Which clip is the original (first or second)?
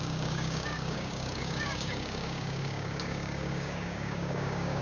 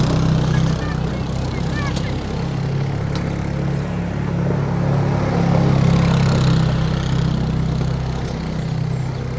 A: second